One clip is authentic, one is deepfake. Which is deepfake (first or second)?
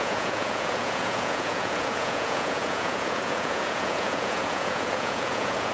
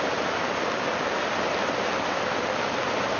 first